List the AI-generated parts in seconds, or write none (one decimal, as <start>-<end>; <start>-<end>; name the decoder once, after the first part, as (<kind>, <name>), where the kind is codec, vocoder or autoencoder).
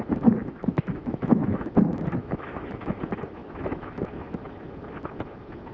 0.4-1.7 (autoencoder, DAC-VAE); 2.2-3.0; 3.4-4.0